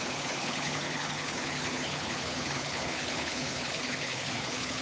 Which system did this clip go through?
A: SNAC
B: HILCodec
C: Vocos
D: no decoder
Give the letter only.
B